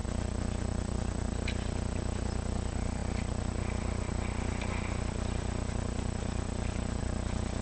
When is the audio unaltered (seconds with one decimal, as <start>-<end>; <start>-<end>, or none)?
0.0-7.6